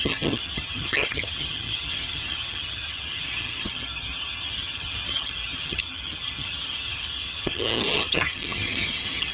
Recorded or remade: remade